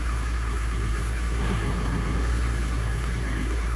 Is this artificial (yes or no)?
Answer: yes